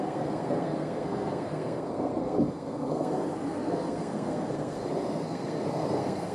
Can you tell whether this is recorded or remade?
remade